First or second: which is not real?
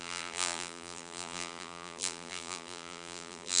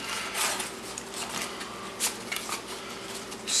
first